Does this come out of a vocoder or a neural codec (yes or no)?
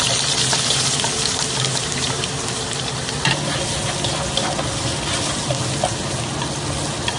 no